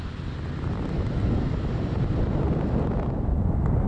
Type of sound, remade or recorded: recorded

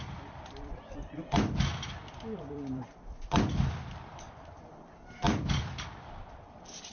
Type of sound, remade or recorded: remade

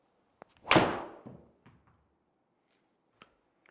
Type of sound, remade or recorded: recorded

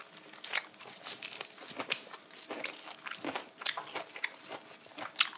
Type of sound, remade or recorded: recorded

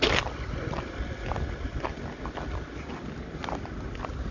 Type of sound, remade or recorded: recorded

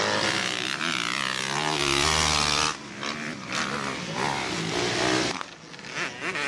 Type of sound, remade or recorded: recorded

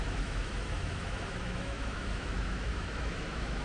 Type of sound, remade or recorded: remade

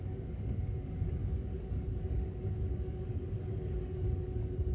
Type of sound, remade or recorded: remade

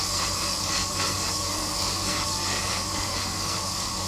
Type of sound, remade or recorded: remade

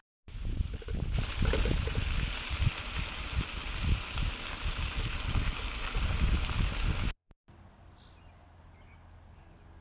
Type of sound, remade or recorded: recorded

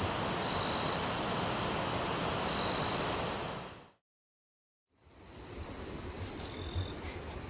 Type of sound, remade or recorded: recorded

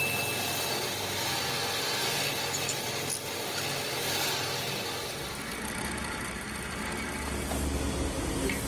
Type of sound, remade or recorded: recorded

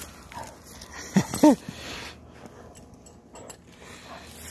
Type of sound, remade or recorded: recorded